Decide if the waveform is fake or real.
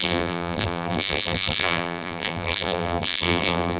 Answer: fake